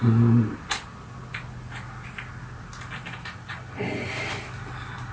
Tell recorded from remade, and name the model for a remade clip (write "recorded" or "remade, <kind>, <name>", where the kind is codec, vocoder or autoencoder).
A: recorded